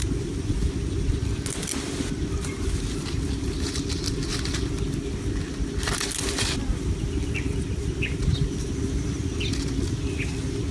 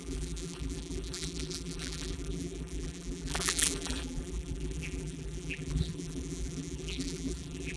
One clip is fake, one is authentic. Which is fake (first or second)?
second